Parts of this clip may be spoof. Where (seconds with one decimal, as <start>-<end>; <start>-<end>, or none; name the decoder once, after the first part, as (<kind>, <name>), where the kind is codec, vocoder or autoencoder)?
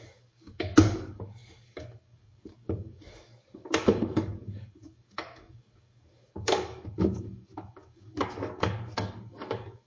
0.0-9.9 (codec, DAC)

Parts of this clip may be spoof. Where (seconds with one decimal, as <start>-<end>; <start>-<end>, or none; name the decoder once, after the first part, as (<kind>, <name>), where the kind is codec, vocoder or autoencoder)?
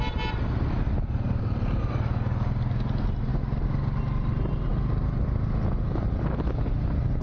none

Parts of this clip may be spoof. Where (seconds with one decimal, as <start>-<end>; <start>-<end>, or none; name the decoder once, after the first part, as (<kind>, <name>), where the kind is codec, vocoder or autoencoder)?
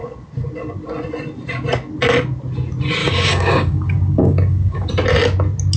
3.0-4.9 (codec, DAC)